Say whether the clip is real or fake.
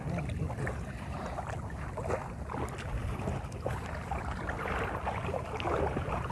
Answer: real